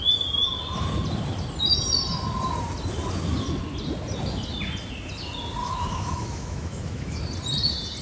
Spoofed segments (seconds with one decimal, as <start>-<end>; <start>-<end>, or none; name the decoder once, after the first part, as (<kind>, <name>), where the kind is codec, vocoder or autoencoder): 5.6-7.2 (autoencoder, DAC-VAE)

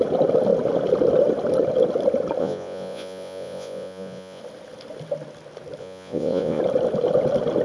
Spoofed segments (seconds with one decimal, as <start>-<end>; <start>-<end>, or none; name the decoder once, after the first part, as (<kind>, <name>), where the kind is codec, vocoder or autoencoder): 2.4-4.4 (vocoder, Vocos); 5.8-6.6

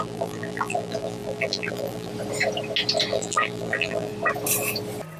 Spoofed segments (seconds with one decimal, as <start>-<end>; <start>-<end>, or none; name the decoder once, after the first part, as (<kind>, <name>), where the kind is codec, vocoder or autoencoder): 0.0-2.1 (vocoder, BigVGAN v2); 3.1-4.1

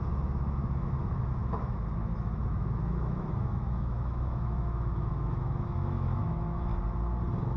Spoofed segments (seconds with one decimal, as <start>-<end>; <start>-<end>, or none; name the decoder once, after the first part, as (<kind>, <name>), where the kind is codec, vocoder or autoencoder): 0.0-6.7 (autoencoder, DAC-VAE)

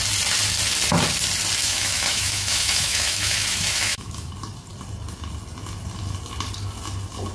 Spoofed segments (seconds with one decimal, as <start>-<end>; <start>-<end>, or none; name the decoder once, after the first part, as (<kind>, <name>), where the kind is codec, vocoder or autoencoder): 1.6-4.3 (autoencoder, DAC-VAE)

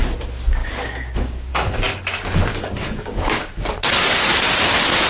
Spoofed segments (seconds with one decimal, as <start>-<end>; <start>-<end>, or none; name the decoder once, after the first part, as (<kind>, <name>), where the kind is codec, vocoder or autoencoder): 0.6-1.5 (codec, DAC); 2.5-3.4

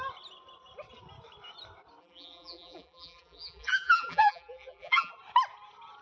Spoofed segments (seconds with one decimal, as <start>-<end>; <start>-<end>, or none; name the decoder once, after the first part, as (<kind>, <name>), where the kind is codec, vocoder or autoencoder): 2.0-5.1 (vocoder, BigVGAN v2)

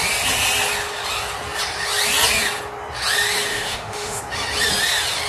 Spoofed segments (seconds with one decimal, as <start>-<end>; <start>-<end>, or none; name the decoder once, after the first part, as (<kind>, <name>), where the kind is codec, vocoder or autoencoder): 3.5-4.2 (autoencoder, DAC-VAE)